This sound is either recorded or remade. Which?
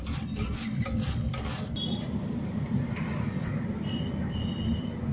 recorded